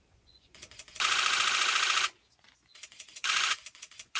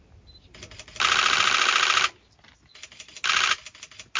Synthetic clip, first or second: first